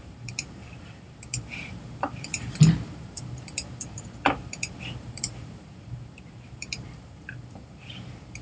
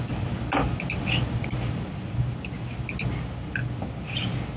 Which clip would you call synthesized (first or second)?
first